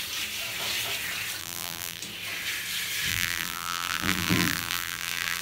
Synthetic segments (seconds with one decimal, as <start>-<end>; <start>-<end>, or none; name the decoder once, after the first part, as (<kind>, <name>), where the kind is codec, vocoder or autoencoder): 1.4-2.0 (vocoder, BigVGAN v2); 3.1-5.4